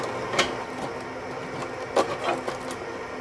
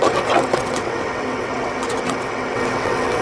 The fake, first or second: second